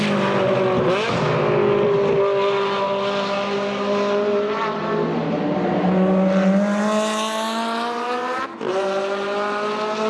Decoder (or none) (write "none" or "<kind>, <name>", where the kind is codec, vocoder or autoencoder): none